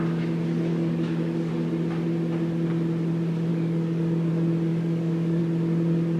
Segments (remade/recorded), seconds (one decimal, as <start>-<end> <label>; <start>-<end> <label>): 0.0-0.7 recorded; 0.7-1.5 remade; 1.5-3.5 recorded; 3.5-4.3 remade; 4.3-4.7 recorded; 4.7-5.4 remade; 5.4-6.2 recorded